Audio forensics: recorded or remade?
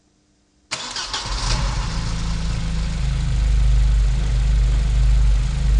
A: recorded